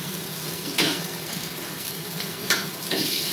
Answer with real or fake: fake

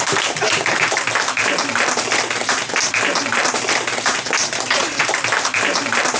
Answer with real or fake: real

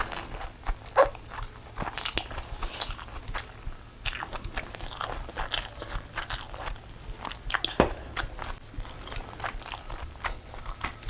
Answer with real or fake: real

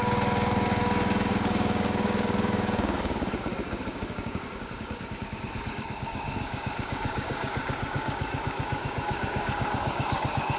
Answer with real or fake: fake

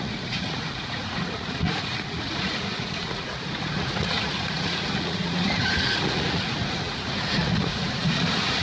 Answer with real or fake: fake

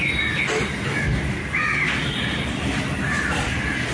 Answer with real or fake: real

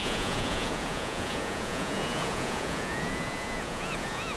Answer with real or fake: fake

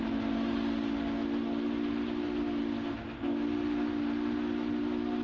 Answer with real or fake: real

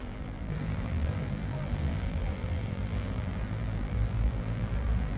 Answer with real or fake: fake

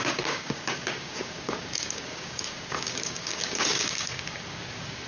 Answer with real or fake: fake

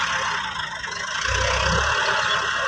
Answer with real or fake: real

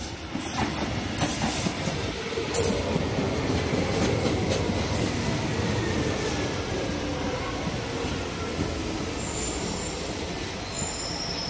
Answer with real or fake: real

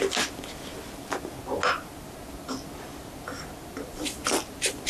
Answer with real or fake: real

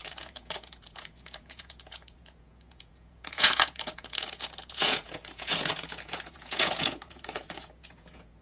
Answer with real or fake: fake